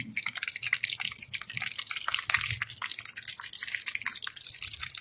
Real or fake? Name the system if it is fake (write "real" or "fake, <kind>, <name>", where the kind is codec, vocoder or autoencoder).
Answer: real